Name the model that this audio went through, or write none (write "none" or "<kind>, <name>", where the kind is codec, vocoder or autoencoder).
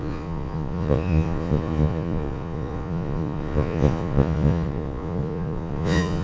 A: vocoder, Vocos